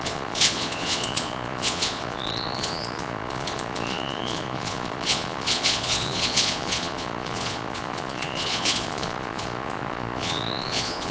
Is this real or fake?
fake